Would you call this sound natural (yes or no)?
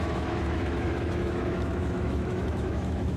no